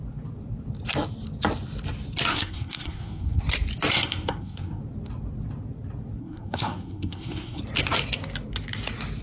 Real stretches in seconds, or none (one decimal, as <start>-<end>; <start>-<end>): 0.0-2.3; 3.4-3.9; 4.8-6.2; 7.6-9.2